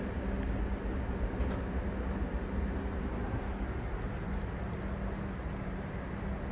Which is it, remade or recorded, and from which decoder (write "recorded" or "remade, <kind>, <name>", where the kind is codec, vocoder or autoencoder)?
recorded